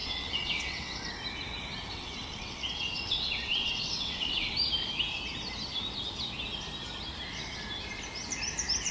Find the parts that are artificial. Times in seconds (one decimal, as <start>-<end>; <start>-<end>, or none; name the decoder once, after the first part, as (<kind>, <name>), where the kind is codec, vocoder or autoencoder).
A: 0.0-1.1 (vocoder, WaveNeXt); 1.9-4.5